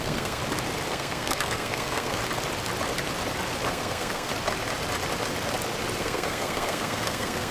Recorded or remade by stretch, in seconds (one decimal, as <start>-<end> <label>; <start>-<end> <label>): 0.0-0.4 remade; 0.4-0.9 recorded; 0.9-2.2 remade; 2.2-3.7 recorded; 3.7-4.3 remade; 4.3-6.0 recorded; 6.0-7.5 remade

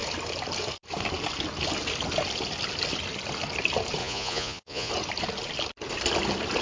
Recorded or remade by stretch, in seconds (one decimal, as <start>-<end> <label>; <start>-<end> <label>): 0.0-4.0 recorded; 4.0-4.9 remade; 4.9-6.6 recorded